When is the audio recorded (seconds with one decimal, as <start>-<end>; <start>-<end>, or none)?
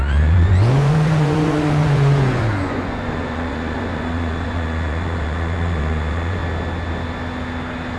6.4-8.0